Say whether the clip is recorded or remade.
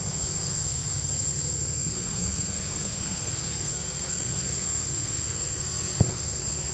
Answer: remade